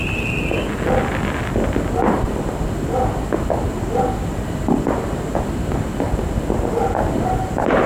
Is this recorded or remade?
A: recorded